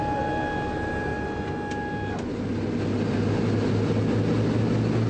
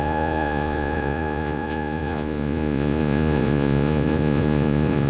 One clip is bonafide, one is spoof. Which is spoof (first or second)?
second